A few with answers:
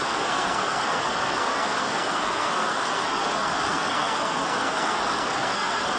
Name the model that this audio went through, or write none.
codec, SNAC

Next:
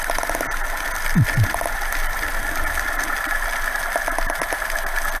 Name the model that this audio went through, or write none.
none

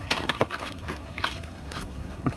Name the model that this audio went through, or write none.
codec, SNAC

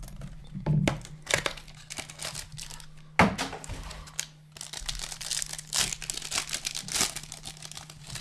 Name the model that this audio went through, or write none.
none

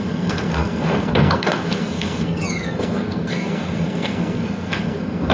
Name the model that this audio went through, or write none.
codec, SNAC